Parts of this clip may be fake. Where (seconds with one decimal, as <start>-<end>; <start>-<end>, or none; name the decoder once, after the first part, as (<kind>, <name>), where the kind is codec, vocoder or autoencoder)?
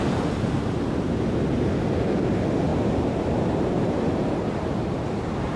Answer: 2.7-5.6 (vocoder, BigVGAN v2)